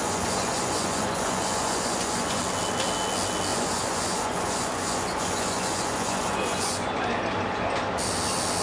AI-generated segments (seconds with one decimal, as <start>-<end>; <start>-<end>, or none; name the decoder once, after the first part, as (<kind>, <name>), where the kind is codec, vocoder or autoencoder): 0.0-2.4 (vocoder, Vocos); 3.5-6.9